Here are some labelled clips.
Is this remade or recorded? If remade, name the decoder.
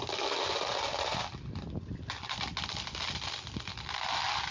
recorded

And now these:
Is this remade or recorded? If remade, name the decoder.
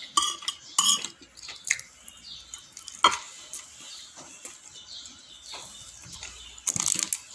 recorded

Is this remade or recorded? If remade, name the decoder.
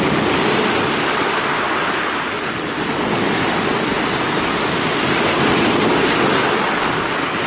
recorded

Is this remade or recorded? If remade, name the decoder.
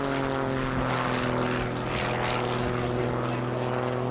recorded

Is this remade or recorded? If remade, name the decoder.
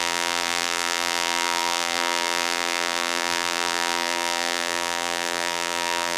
remade, vocoder, BigVGAN v2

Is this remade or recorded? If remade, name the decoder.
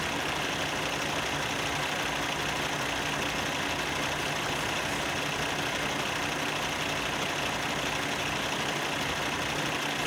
recorded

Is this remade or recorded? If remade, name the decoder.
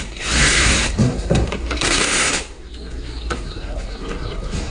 remade, codec, SNAC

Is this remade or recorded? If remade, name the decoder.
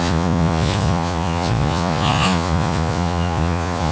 remade, vocoder, Vocos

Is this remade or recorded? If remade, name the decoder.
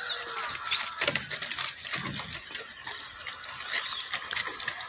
recorded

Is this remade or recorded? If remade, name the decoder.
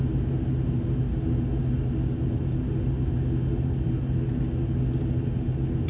recorded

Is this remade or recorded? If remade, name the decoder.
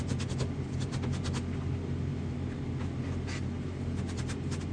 recorded